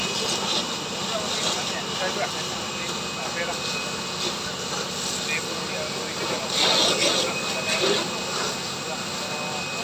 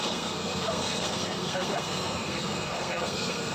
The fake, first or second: second